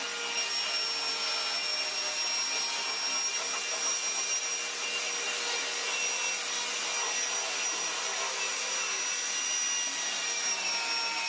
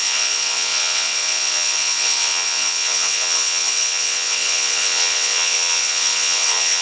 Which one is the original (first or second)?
first